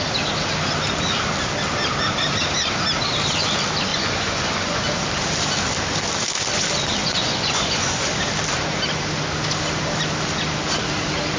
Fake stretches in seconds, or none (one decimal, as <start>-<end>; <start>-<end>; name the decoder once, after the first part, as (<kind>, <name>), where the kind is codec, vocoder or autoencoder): 3.9-4.8 (vocoder, Vocos); 7.0-8.1